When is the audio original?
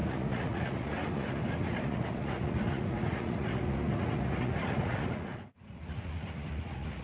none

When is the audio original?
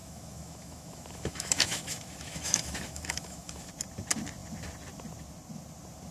3.7-6.1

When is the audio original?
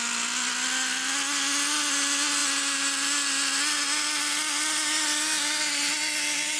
0.0-6.6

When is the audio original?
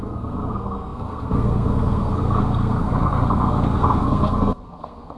none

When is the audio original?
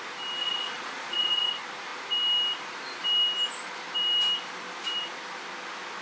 0.0-0.4; 1.5-6.0